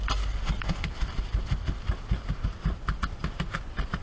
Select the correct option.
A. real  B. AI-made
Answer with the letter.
A